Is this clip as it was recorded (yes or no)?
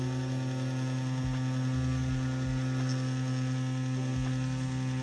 yes